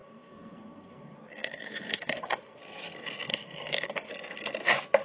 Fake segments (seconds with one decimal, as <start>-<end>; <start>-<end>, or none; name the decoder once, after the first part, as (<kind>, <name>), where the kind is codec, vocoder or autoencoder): 0.0-2.6 (codec, SNAC); 3.3-4.1